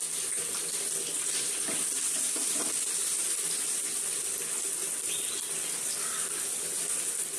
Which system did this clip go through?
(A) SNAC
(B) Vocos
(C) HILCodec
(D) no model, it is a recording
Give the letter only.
D